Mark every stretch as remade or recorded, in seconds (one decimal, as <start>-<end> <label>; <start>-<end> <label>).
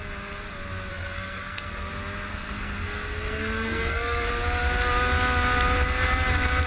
0.0-0.9 recorded; 0.9-1.9 remade; 1.9-2.3 recorded; 2.3-4.3 remade; 4.3-6.7 recorded